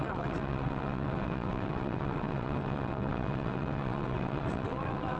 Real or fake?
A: fake